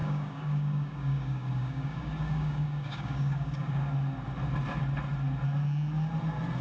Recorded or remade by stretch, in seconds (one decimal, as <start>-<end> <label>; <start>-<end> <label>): 0.0-3.9 remade; 3.9-6.6 recorded